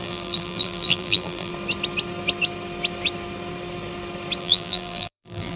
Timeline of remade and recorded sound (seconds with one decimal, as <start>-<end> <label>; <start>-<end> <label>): 0.0-1.5 remade; 1.5-4.4 recorded; 4.4-5.6 remade